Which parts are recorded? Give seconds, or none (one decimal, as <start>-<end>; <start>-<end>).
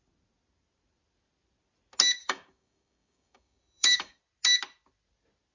0.0-2.2; 4.2-5.5